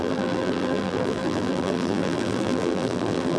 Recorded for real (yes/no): no